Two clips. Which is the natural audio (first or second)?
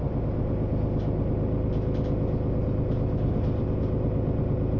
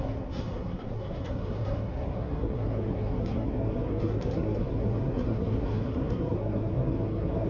first